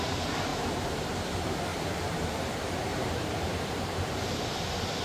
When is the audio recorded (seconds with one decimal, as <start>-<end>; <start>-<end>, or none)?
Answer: 0.0-0.5; 1.1-1.7; 2.5-2.9; 4.4-5.0